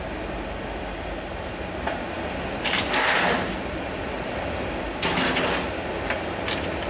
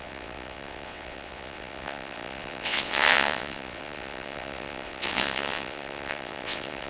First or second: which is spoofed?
second